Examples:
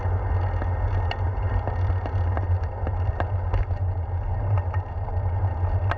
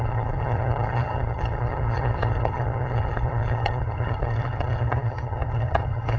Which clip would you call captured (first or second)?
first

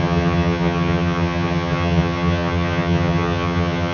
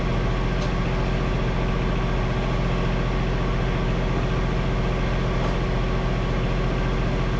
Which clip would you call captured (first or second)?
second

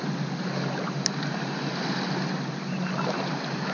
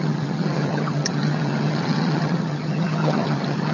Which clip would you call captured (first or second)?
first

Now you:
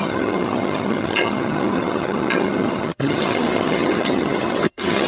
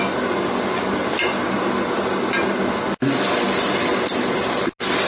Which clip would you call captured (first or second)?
second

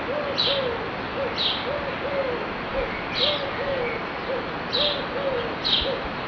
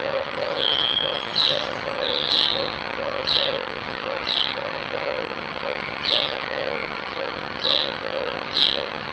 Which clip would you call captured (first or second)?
first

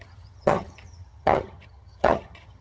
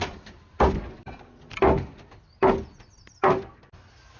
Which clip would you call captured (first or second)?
second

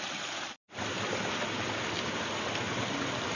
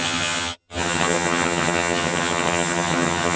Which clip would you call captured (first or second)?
first